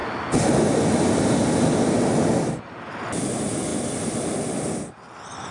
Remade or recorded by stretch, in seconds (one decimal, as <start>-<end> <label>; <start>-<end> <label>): 0.0-5.5 recorded